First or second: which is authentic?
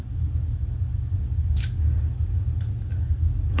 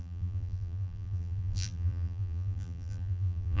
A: first